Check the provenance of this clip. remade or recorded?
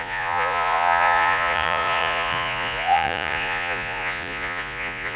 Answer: remade